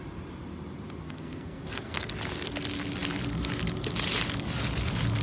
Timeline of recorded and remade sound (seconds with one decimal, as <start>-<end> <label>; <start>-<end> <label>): 0.0-1.0 recorded; 1.0-2.1 remade; 2.1-5.2 recorded